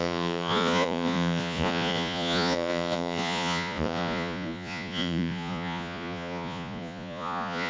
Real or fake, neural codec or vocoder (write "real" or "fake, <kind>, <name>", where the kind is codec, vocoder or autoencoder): fake, vocoder, Vocos